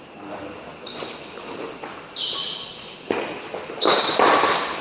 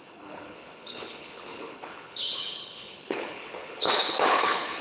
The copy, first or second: second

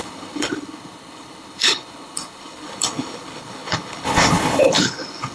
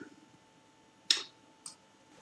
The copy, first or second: first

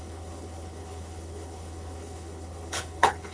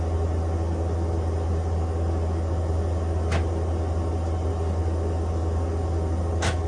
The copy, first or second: first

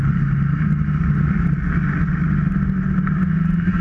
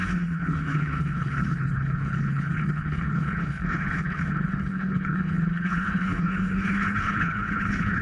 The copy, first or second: second